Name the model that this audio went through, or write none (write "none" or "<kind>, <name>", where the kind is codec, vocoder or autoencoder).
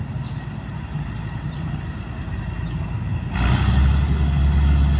none